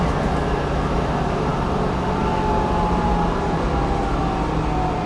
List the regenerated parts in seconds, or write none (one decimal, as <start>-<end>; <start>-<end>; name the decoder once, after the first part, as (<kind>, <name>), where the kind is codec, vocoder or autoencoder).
none